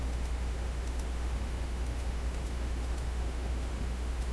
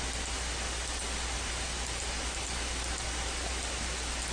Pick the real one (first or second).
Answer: second